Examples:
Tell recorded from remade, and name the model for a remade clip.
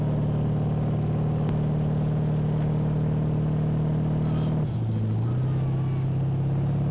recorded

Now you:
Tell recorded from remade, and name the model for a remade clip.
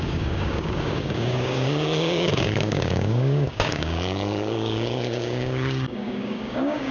remade, codec, DAC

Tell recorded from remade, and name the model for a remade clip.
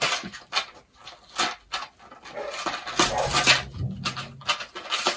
recorded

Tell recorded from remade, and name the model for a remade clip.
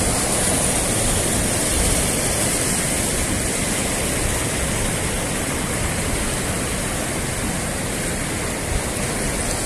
recorded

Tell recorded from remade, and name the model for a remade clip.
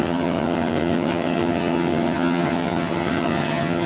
remade, vocoder, HiFi-GAN